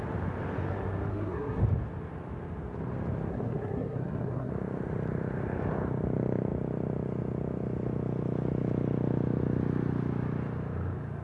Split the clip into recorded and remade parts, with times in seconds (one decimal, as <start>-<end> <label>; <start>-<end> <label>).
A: 0.0-1.1 recorded; 1.1-1.6 remade; 1.6-3.3 recorded; 3.3-4.5 remade; 4.5-11.2 recorded

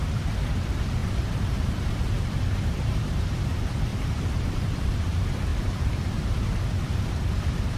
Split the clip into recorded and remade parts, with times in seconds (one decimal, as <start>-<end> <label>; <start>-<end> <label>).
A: 0.0-7.8 remade

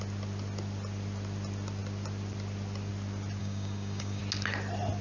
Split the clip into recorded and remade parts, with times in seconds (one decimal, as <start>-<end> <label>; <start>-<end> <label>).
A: 0.0-3.4 recorded; 3.4-4.2 remade; 4.2-5.0 recorded